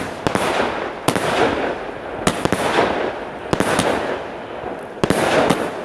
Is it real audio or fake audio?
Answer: real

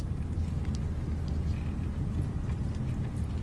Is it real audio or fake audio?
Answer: real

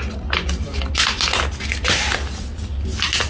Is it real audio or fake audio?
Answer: real